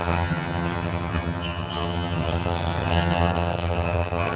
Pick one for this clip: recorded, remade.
remade